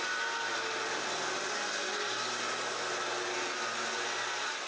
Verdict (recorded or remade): recorded